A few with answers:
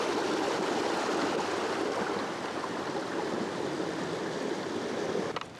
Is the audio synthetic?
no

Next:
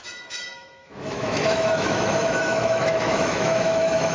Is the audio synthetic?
yes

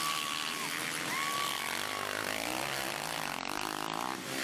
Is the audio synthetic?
no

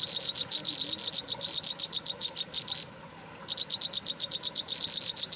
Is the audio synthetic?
no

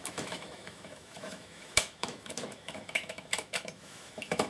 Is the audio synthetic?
yes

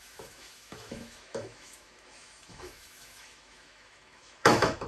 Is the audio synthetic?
yes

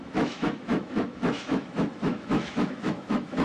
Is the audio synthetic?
yes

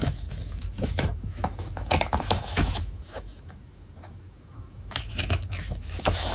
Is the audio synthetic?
yes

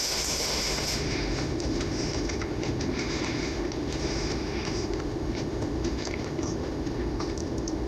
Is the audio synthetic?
yes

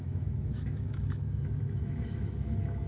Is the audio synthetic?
yes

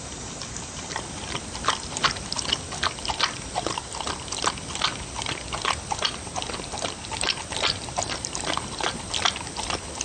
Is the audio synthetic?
no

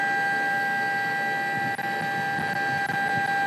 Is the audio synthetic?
no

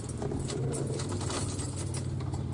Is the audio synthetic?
no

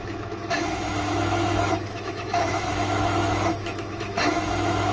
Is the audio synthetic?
yes